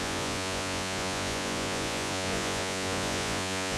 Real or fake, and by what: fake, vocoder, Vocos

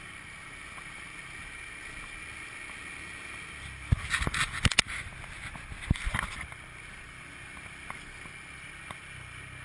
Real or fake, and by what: real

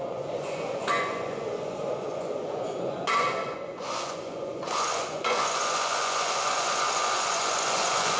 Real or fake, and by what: fake, vocoder, Vocos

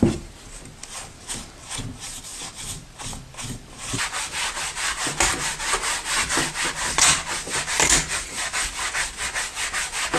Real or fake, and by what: real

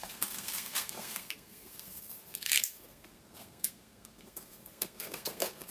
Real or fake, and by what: fake, codec, SNAC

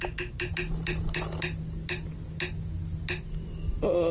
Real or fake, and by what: real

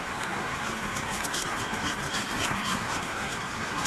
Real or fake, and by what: fake, codec, SNAC